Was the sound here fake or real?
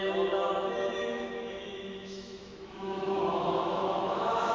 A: fake